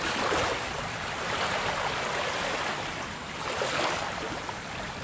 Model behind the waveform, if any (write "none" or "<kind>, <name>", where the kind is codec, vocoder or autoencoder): none